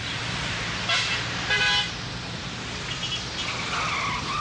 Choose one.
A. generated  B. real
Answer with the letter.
B